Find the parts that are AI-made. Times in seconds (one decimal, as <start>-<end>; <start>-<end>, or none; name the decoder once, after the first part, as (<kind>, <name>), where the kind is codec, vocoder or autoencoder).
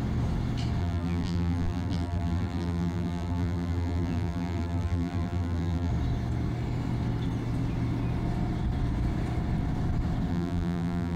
0.8-5.9 (vocoder, BigVGAN v2); 10.3-11.2